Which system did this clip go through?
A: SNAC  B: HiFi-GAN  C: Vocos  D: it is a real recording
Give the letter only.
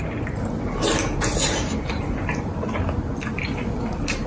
D